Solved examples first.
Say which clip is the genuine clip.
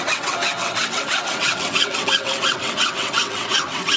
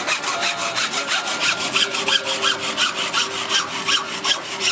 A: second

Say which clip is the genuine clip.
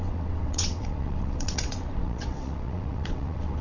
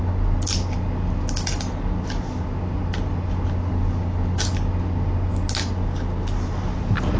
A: second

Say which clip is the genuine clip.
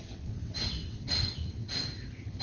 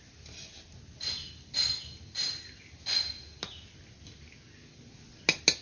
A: second